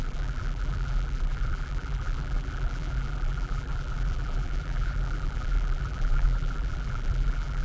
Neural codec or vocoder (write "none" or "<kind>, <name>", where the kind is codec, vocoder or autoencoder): vocoder, BigVGAN v2